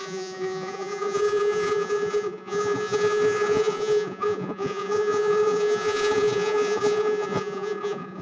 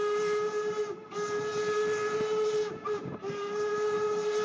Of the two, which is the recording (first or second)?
second